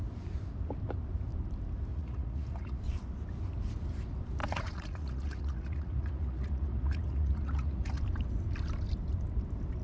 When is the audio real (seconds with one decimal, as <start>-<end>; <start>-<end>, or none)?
0.0-1.9; 2.8-4.4; 8.0-9.8